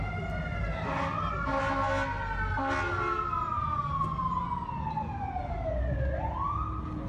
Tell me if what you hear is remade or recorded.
recorded